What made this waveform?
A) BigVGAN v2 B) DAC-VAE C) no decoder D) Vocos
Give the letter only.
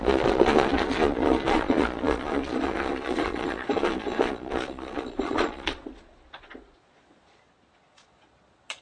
D